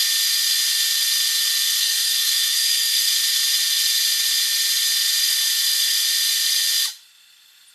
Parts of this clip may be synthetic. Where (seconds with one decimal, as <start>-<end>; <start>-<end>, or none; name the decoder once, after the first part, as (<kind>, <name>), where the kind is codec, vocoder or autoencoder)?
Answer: 1.7-3.1 (codec, SNAC)